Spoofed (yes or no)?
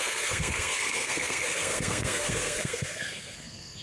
yes